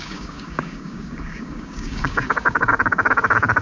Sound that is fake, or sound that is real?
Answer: fake